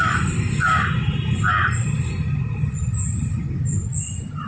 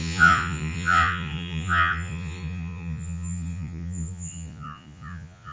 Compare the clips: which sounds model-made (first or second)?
second